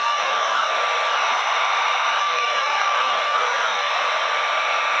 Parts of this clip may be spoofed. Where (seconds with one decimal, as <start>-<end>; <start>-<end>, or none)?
0.0-0.7; 2.2-3.9